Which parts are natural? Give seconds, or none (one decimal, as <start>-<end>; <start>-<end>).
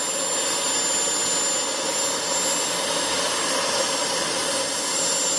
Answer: 0.0-5.4